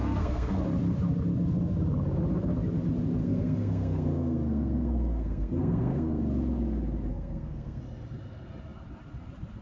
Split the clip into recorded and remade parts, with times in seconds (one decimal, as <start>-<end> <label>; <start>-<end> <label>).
0.0-0.6 remade; 0.6-3.2 recorded; 3.2-6.2 remade; 6.2-7.1 recorded; 7.1-7.8 remade; 7.8-9.6 recorded